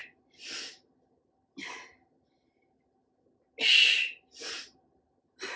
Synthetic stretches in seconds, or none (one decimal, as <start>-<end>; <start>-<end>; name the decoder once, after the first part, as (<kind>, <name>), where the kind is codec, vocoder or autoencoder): none